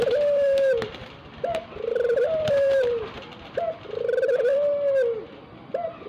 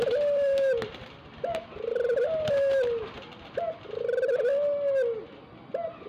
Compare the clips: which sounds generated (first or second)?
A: first